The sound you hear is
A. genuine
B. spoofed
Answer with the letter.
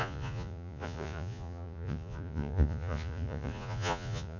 B